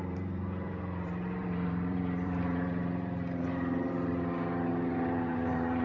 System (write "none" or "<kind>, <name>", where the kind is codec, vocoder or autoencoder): vocoder, BigVGAN v2